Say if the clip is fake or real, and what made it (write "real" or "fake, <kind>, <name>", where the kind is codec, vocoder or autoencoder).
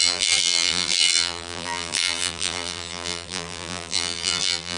fake, vocoder, BigVGAN v2